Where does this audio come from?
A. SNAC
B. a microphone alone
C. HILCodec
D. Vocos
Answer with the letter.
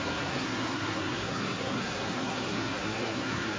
A